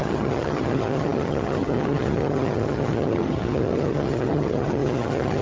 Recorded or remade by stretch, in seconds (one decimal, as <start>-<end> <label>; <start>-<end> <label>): 0.0-5.4 remade